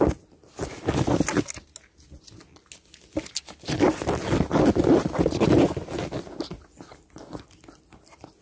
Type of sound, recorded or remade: recorded